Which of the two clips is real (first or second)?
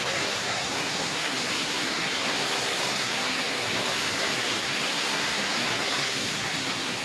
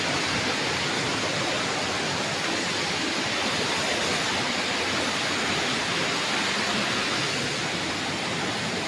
second